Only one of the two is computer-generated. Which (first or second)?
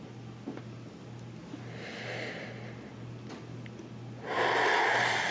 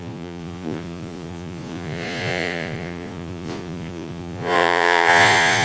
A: second